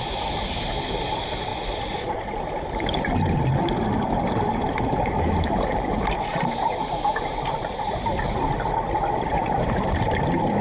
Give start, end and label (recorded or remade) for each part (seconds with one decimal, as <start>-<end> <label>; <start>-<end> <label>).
0.0-1.5 remade; 1.5-5.2 recorded; 5.2-8.1 remade; 8.1-9.4 recorded; 9.4-10.6 remade